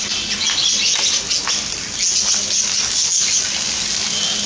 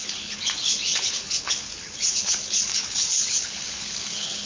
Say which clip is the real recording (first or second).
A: first